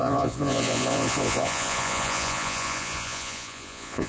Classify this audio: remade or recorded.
remade